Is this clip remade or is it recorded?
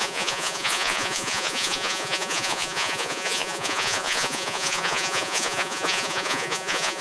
remade